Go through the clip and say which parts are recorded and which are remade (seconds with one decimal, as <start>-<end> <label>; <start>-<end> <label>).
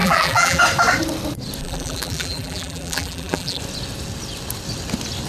0.0-0.6 remade; 0.6-1.6 recorded; 1.6-3.6 remade; 3.6-5.3 recorded